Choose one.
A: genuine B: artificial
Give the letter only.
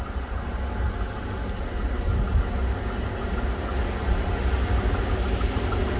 A